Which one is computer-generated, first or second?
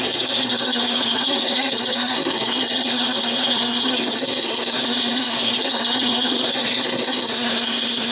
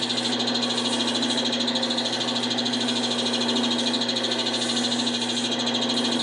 first